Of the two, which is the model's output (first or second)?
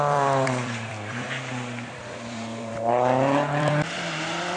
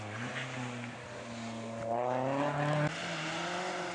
first